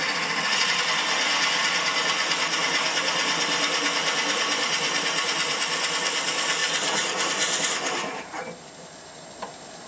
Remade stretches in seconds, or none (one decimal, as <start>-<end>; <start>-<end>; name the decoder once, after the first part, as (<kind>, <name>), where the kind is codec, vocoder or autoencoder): none